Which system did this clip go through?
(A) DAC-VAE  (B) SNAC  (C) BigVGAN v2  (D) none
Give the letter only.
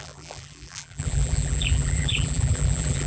C